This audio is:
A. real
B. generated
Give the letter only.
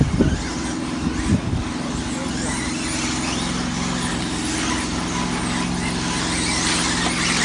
A